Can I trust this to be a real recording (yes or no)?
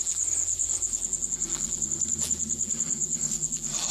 no